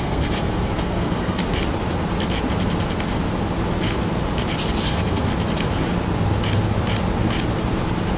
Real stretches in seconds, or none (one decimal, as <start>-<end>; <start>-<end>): 1.4-4.8; 5.3-8.2